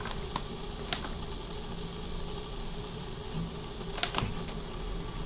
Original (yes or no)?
yes